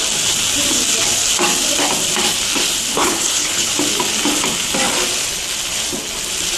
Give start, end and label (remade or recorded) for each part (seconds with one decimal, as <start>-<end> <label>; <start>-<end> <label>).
0.0-2.9 recorded; 2.9-3.7 remade; 3.7-6.6 recorded